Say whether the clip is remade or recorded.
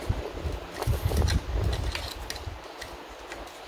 recorded